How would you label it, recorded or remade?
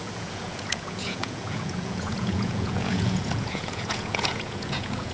remade